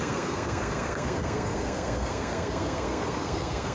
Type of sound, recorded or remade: remade